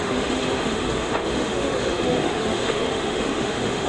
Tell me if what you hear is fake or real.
fake